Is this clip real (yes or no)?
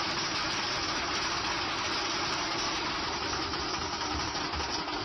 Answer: yes